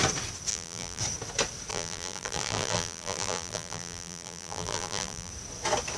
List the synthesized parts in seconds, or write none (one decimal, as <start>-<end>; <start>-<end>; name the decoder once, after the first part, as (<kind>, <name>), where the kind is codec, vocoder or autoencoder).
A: 0.5-1.0 (vocoder, BigVGAN v2); 1.7-5.3